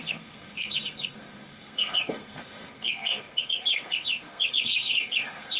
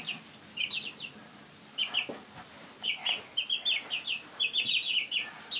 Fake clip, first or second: first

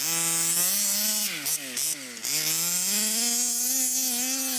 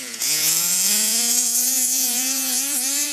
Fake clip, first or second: second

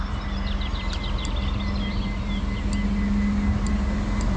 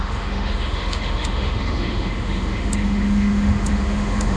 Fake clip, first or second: second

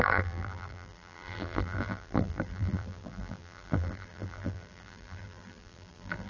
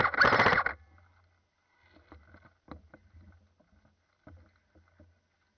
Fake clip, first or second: first